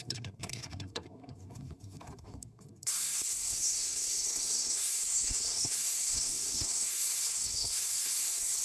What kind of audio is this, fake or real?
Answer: fake